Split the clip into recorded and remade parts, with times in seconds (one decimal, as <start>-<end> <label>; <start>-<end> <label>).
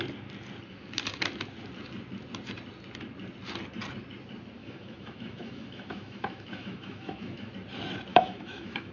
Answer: 0.0-4.6 recorded; 4.6-7.5 remade; 7.5-8.1 recorded; 8.1-8.9 remade